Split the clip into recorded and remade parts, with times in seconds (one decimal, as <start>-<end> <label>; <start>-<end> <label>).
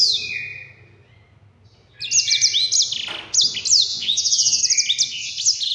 0.0-3.9 recorded; 3.9-4.6 remade; 4.6-5.7 recorded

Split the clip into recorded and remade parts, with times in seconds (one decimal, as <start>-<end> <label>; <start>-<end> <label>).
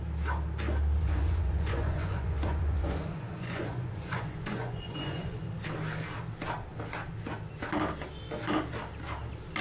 0.0-1.0 recorded; 1.0-5.5 remade; 5.5-9.6 recorded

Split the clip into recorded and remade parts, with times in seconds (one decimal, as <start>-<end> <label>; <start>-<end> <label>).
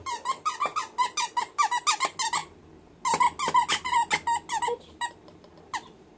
0.0-6.2 recorded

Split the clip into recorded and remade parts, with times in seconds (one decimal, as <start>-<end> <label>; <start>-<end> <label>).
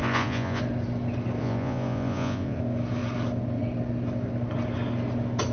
0.0-0.6 remade; 0.6-1.4 recorded; 1.4-2.6 remade; 2.6-5.5 recorded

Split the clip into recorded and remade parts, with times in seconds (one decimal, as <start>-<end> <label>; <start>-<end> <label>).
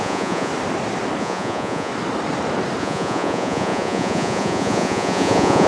0.0-0.5 remade; 0.5-1.2 recorded; 1.2-1.9 remade; 1.9-2.8 recorded; 2.8-5.7 remade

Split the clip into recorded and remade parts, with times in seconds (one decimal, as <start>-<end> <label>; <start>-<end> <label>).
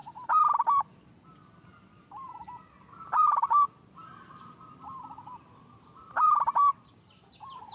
0.0-7.7 recorded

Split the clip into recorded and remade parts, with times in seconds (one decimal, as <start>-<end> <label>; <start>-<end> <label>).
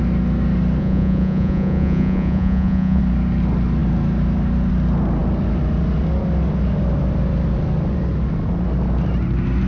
0.0-0.8 recorded; 0.8-3.0 remade; 3.0-9.7 recorded